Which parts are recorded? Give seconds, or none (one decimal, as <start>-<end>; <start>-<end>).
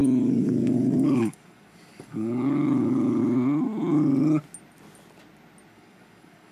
3.2-5.7